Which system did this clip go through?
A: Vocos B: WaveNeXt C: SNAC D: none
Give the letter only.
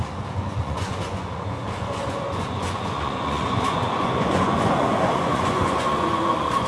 A